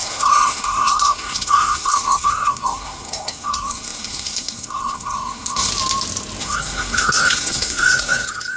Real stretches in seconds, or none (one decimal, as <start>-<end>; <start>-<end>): 5.7-6.4